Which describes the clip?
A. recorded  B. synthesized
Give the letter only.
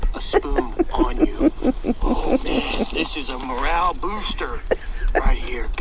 A